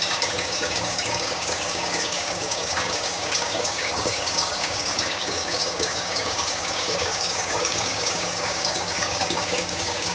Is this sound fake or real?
fake